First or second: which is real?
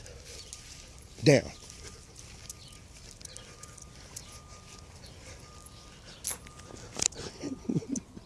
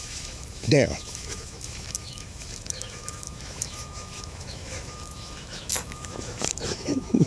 first